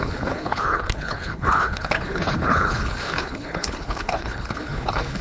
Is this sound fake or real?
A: fake